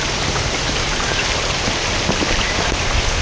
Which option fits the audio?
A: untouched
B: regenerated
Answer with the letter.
A